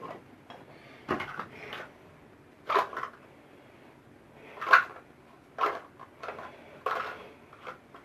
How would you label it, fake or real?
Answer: real